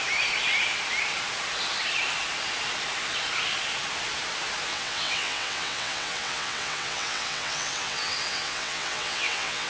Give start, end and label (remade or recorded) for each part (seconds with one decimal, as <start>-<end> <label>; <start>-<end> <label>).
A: 0.0-4.7 recorded; 4.7-9.7 remade